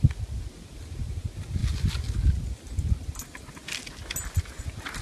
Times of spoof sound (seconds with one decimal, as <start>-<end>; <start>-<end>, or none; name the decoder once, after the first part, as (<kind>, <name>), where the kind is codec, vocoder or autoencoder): none